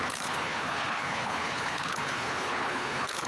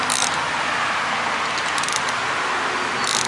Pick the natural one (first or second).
second